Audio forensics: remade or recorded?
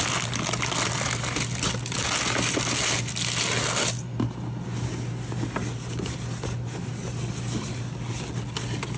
recorded